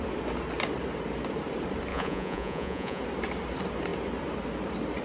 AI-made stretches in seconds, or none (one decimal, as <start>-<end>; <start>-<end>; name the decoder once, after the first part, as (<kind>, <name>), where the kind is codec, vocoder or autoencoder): 1.9-3.0 (vocoder, Vocos)